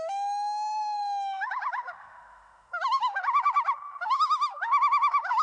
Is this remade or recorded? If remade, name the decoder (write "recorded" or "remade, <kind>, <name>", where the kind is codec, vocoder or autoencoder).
remade, autoencoder, DAC-VAE